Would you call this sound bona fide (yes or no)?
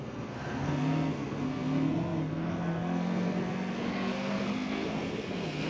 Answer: no